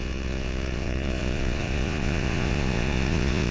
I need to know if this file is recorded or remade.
remade